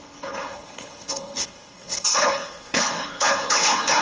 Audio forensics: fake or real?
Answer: fake